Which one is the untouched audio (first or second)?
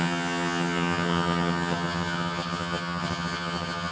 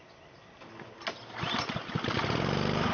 second